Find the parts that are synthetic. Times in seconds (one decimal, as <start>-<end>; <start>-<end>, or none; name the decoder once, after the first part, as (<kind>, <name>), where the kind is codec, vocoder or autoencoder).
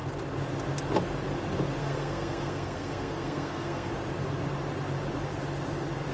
1.8-3.9 (codec, SNAC)